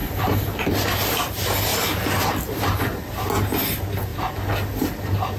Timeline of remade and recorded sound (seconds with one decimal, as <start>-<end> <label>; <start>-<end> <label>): 0.0-0.7 remade; 0.7-5.4 recorded